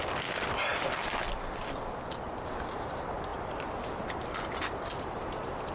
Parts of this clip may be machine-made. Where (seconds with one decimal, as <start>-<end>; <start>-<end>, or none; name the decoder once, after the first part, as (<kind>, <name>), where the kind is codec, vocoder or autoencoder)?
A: none